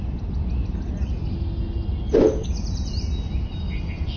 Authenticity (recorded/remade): recorded